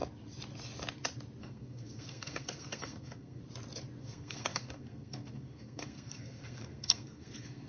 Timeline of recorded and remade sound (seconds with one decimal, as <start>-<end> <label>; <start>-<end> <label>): 0.0-1.4 recorded; 1.4-3.4 remade; 3.4-4.0 recorded; 4.0-7.7 remade